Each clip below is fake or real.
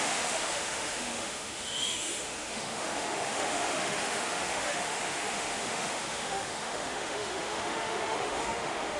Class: fake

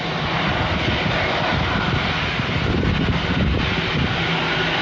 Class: real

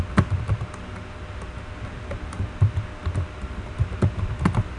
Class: real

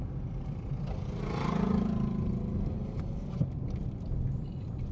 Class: real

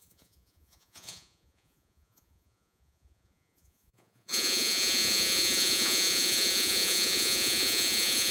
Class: fake